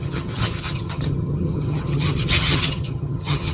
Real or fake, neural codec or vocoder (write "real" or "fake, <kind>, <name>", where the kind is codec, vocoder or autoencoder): fake, vocoder, HiFi-GAN